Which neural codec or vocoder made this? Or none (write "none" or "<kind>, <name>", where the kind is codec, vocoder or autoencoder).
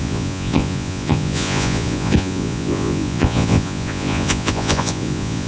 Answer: vocoder, Vocos